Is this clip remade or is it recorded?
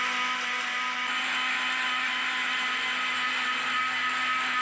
recorded